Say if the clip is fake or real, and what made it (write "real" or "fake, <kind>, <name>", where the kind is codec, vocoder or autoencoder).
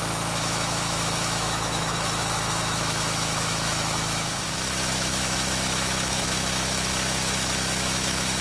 fake, autoencoder, DAC-VAE